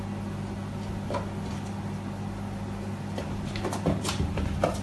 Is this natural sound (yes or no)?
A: yes